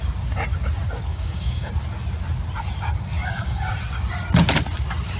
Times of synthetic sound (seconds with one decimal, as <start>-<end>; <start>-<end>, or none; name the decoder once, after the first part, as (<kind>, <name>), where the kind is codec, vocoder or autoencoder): 1.1-1.7 (codec, DAC); 3.1-3.7